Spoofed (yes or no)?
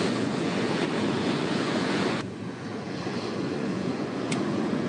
yes